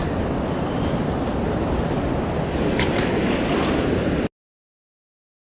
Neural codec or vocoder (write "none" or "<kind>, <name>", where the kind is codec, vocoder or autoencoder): none